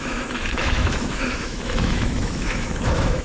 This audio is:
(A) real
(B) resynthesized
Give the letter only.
B